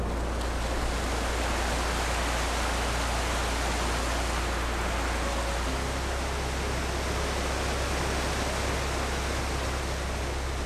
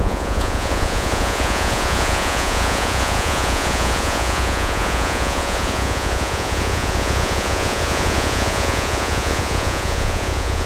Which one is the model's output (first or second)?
second